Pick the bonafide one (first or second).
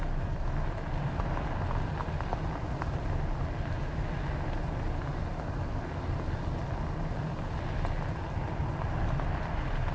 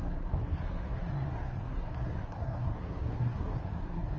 first